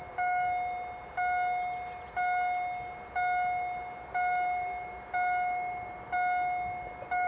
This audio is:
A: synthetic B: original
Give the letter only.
B